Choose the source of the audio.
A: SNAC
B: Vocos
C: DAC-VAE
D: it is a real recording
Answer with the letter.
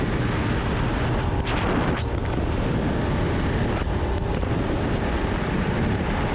D